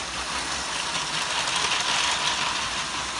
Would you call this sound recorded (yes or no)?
yes